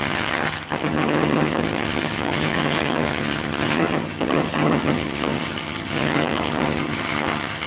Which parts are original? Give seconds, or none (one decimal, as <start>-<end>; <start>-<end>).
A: none